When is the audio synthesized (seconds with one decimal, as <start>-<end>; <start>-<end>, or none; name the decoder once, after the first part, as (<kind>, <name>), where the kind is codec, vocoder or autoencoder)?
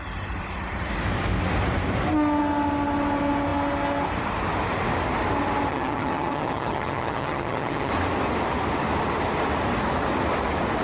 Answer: 5.7-7.9 (vocoder, HiFi-GAN)